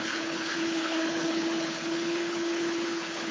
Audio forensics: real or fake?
fake